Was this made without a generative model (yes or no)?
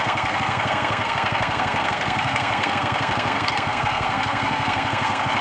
no